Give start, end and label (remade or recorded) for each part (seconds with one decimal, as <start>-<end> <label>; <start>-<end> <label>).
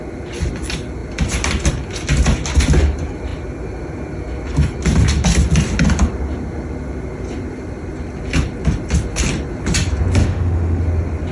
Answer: 0.0-10.2 recorded; 10.2-10.8 remade; 10.8-11.3 recorded